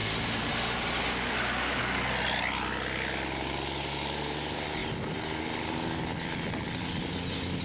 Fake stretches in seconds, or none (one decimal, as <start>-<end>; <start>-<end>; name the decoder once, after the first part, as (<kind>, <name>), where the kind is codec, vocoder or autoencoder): none